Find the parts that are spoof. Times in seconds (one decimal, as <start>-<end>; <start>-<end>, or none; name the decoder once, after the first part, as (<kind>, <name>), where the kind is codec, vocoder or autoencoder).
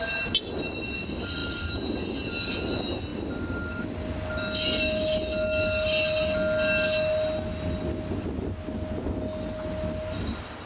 none